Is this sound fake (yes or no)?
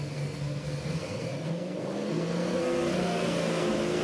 yes